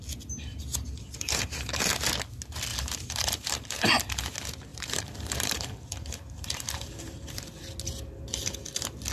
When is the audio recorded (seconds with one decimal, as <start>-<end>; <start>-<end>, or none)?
0.0-0.5; 1.8-2.7; 3.9-4.7; 7.3-9.1